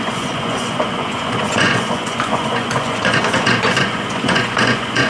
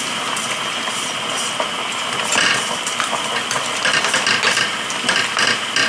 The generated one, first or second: first